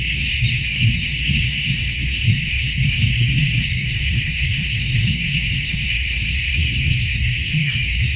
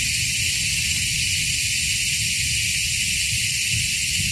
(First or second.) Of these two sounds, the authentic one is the second